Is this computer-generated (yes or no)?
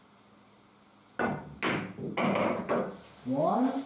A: no